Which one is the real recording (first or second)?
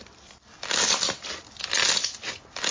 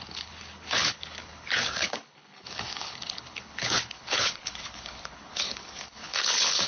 first